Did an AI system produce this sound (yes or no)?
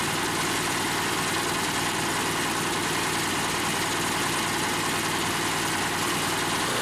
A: no